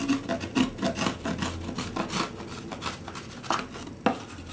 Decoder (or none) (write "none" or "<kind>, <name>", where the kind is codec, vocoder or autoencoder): none